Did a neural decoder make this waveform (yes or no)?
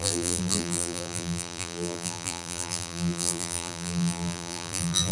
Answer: yes